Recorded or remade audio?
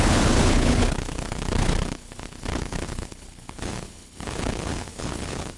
remade